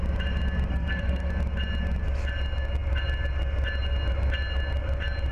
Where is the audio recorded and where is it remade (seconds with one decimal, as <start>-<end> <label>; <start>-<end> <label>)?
0.0-0.7 recorded; 0.7-1.3 remade; 1.3-5.3 recorded